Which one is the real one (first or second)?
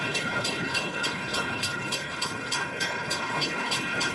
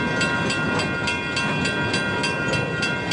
second